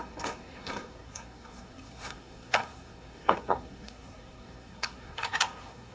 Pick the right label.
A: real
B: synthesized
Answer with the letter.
B